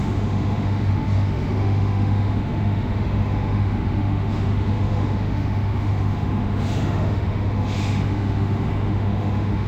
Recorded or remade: remade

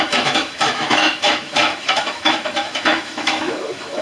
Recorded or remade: remade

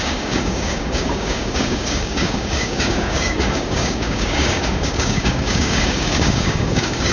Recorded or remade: remade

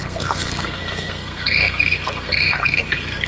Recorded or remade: remade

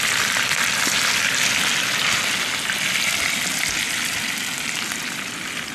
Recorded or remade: recorded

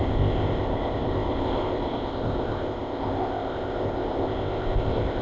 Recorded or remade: remade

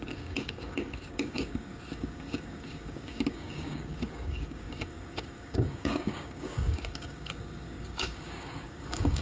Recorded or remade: remade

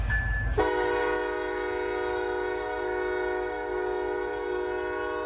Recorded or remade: recorded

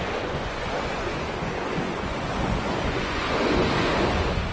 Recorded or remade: remade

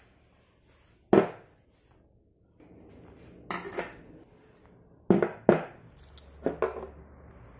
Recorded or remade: recorded